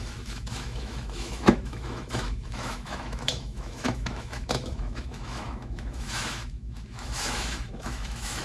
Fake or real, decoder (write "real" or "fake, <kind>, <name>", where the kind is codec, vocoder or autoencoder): fake, autoencoder, DAC-VAE